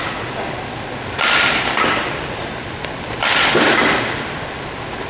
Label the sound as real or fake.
real